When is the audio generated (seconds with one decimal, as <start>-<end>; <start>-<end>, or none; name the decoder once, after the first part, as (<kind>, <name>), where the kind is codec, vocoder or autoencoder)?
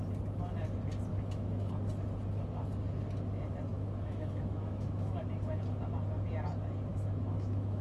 1.1-1.7 (autoencoder, DAC-VAE); 3.7-5.2; 6.9-7.8